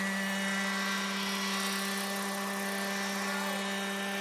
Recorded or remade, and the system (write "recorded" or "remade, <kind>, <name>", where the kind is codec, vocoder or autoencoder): recorded